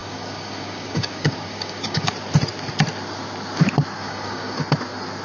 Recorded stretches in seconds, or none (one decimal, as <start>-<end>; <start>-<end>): 2.1-4.0; 4.6-5.2